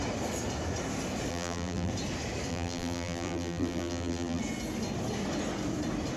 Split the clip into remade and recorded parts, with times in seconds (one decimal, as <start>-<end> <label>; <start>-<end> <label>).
0.0-1.3 recorded; 1.3-1.9 remade; 1.9-2.5 recorded; 2.5-4.4 remade; 4.4-6.2 recorded